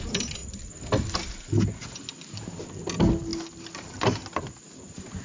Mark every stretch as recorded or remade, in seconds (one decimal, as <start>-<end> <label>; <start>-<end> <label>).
0.0-5.2 recorded